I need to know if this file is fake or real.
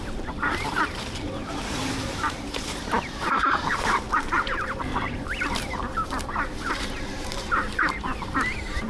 fake